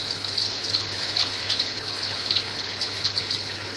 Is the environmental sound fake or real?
fake